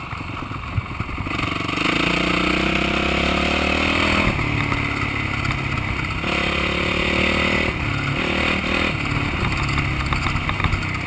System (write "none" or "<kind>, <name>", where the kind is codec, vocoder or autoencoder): none